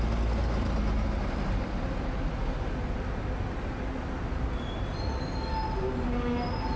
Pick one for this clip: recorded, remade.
recorded